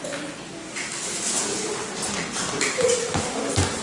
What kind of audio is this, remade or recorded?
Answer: recorded